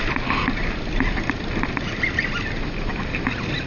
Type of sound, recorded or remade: recorded